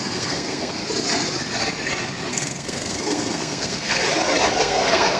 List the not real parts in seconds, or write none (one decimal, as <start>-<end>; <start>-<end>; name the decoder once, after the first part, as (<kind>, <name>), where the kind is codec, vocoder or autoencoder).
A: 0.0-0.8 (codec, SNAC); 2.3-4.0; 4.6-5.2